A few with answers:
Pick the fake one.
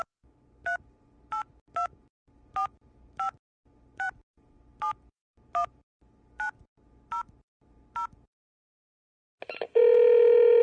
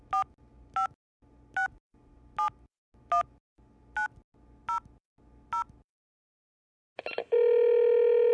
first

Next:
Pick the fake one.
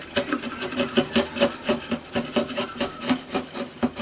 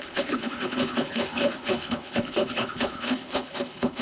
second